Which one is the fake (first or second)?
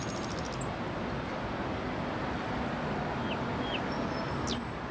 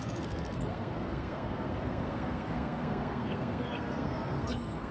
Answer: second